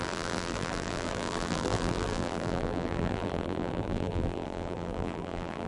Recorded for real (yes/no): no